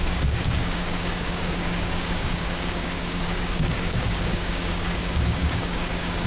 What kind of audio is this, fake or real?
fake